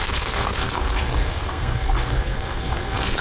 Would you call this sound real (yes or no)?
no